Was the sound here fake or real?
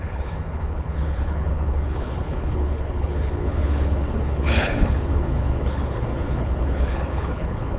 fake